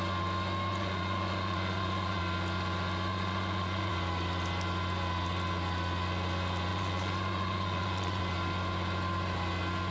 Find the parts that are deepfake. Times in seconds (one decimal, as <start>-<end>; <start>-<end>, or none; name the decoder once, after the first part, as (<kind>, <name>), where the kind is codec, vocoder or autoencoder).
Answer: 0.7-2.2 (vocoder, Vocos); 3.1-3.9; 6.7-8.2